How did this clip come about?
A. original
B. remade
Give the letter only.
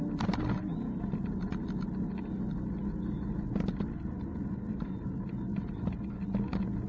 A